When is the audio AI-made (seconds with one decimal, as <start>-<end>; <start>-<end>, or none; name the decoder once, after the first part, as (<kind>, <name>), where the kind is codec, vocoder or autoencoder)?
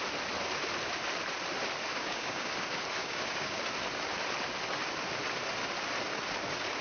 1.9-2.5 (codec, DAC); 3.0-3.6